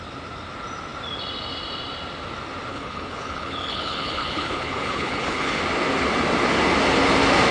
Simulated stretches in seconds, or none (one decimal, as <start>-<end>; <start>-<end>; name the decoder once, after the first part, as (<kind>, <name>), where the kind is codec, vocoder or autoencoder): 2.7-5.6 (codec, HILCodec)